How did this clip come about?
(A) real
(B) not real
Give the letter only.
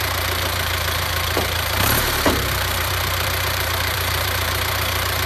B